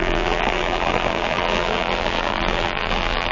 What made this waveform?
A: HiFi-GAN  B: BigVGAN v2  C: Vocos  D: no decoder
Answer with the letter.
B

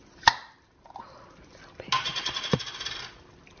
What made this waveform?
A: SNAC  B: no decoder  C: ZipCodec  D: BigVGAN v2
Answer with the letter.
B